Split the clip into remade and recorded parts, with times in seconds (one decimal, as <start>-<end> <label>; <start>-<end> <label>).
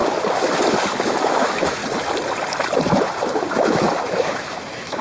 0.0-0.8 recorded; 0.8-1.8 remade; 1.8-3.2 recorded; 3.2-5.0 remade